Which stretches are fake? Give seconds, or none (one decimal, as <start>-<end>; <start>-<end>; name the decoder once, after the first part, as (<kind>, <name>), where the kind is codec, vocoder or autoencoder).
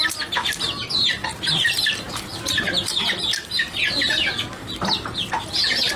1.2-3.8 (vocoder, BigVGAN v2)